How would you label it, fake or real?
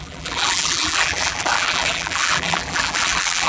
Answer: fake